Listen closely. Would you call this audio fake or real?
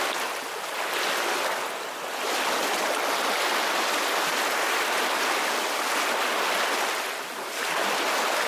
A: real